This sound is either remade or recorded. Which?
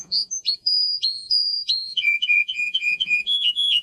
remade